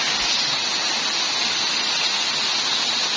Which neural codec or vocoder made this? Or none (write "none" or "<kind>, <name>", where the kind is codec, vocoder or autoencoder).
none